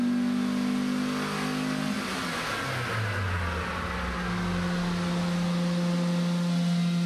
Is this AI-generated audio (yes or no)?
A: no